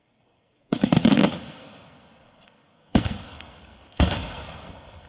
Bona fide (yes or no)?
no